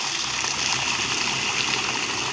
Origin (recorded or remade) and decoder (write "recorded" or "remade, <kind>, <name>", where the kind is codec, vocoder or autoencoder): recorded